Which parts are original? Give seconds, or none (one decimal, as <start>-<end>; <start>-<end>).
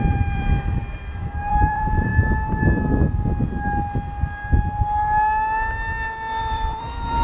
2.1-6.4